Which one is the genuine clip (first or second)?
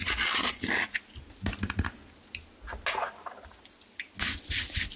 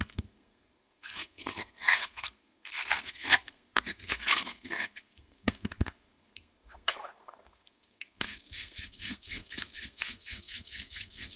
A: first